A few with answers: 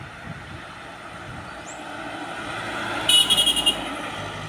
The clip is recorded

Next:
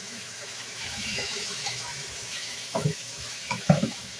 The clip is remade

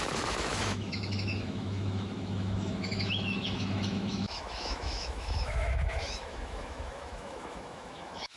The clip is remade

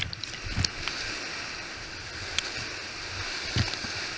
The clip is recorded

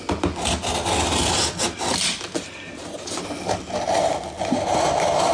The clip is recorded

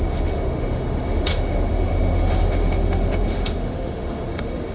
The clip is remade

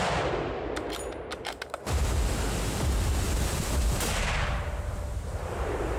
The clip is recorded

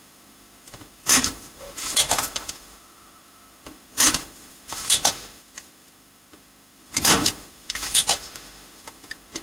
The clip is remade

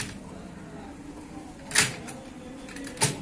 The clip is recorded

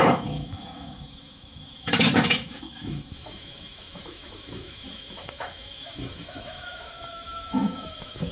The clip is remade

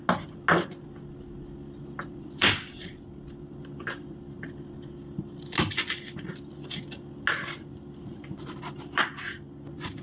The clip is recorded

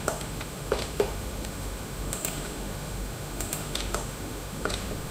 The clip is remade